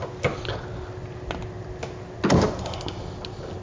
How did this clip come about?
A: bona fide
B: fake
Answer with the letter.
A